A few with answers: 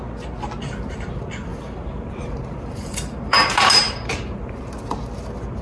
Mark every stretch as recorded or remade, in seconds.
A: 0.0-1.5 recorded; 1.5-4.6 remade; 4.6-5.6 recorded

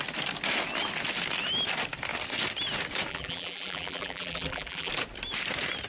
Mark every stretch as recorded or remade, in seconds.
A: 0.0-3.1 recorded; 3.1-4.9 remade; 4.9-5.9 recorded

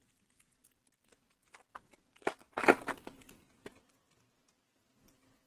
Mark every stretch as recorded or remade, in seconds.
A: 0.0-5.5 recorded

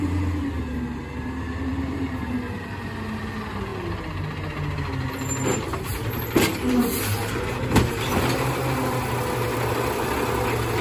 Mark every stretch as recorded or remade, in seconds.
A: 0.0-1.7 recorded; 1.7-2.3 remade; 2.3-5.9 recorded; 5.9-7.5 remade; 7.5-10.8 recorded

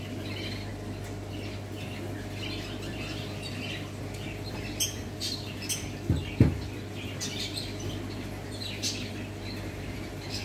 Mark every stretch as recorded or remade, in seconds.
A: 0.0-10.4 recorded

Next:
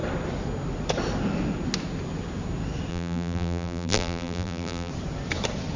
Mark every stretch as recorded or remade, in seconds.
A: 0.0-2.9 recorded; 2.9-4.9 remade; 4.9-5.8 recorded

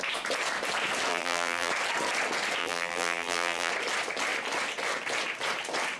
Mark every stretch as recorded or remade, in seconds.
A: 0.0-1.1 recorded; 1.1-1.7 remade; 1.7-2.6 recorded; 2.6-3.7 remade; 3.7-6.0 recorded

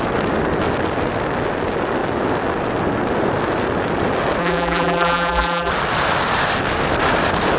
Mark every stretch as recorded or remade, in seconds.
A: 0.0-4.4 recorded; 4.4-5.7 remade; 5.7-7.6 recorded